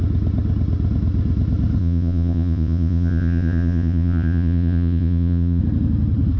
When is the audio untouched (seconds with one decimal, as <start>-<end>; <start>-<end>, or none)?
0.0-1.8; 5.6-6.4